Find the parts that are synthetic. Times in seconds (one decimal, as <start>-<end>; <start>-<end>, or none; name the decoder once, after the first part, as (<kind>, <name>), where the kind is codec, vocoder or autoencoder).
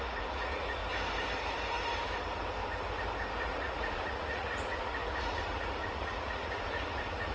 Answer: 0.0-0.8 (vocoder, Vocos); 3.4-7.3